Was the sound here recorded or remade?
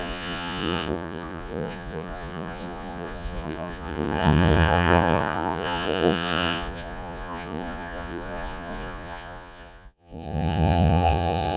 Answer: remade